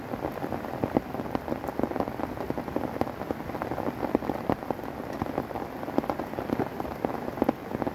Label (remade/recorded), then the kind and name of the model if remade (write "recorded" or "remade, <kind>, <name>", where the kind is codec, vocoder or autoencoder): recorded